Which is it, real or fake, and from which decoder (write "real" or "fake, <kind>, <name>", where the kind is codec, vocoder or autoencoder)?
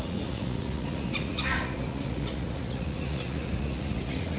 fake, vocoder, Vocos